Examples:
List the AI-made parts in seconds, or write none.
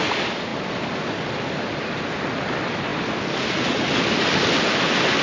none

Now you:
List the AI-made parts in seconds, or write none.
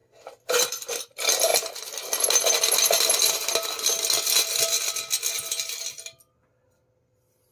none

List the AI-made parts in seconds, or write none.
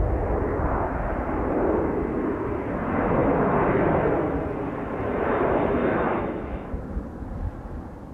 5.8-6.7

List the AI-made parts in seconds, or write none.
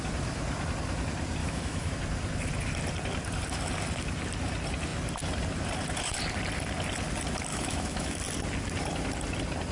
1.4-1.9; 7.5-8.2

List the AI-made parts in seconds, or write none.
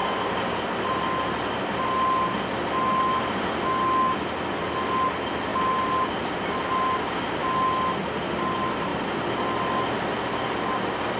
none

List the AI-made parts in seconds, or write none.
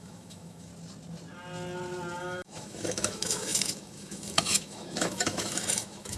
0.0-0.7; 2.2-6.2